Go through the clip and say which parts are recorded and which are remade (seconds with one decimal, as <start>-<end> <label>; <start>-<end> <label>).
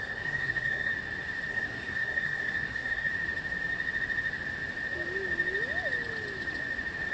0.0-0.9 remade; 0.9-1.5 recorded; 1.5-3.1 remade; 3.1-7.1 recorded